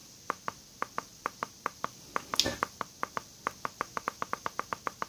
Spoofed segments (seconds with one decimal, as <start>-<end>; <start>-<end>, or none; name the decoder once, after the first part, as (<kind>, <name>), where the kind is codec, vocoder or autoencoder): none